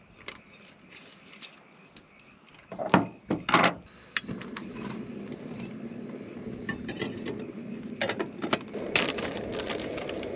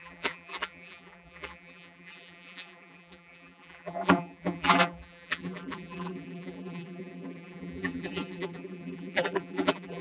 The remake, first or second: second